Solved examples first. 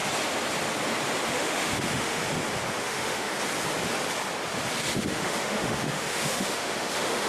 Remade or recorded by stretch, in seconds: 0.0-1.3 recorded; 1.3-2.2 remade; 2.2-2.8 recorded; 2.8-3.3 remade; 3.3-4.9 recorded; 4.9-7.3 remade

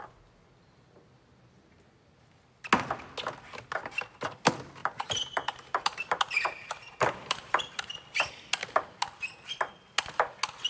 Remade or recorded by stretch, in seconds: 0.0-4.8 recorded; 4.8-7.8 remade; 7.8-10.7 recorded

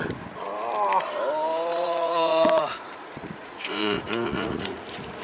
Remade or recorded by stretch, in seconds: 0.0-1.7 recorded; 1.7-4.8 remade; 4.8-5.2 recorded

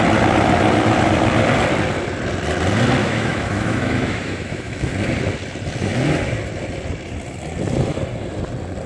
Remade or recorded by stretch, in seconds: 0.0-3.0 recorded; 3.0-4.9 remade; 4.9-8.9 recorded

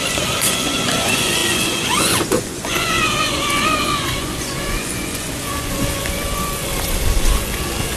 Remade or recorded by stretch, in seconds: 0.0-6.7 remade; 6.7-7.2 recorded; 7.2-8.0 remade

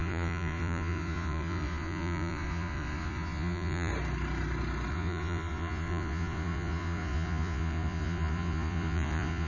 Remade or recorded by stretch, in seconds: 0.0-3.9 remade; 3.9-4.9 recorded; 4.9-9.5 remade

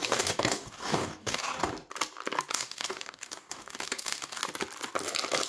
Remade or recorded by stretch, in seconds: 0.0-1.5 remade; 1.5-2.5 recorded; 2.5-4.4 remade; 4.4-5.5 recorded

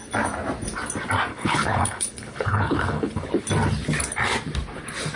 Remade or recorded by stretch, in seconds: 0.0-1.3 recorded; 1.3-3.3 remade; 3.3-5.2 recorded